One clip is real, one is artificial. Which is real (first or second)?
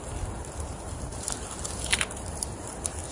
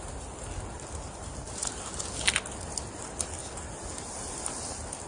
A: second